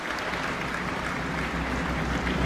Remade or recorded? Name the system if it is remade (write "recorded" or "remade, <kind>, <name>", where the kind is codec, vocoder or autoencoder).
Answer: recorded